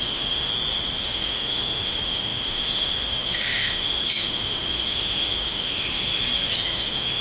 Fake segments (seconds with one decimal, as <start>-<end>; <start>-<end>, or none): 0.0-0.5; 1.0-7.2